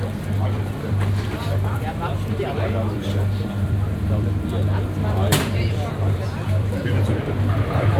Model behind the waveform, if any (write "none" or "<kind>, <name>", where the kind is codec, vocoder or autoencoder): vocoder, BigVGAN v2